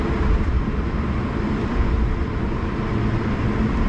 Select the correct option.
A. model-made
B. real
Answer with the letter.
A